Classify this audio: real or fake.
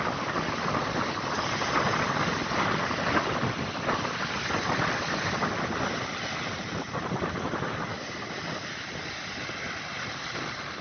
real